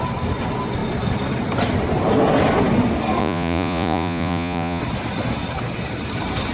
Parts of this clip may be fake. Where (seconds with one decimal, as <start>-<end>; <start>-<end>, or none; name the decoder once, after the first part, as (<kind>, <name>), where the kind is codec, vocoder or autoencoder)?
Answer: 3.2-4.8 (vocoder, Vocos)

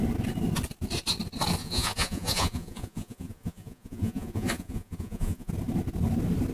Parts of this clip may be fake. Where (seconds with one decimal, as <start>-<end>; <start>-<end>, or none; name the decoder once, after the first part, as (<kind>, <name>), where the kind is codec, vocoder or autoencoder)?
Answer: 1.6-5.5 (vocoder, Vocos)

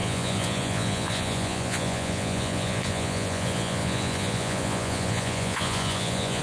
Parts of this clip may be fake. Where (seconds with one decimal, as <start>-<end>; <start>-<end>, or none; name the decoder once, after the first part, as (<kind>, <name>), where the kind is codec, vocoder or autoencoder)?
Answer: 0.0-6.4 (vocoder, Vocos)